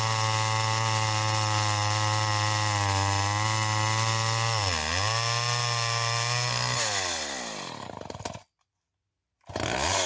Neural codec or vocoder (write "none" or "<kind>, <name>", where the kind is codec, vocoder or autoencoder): none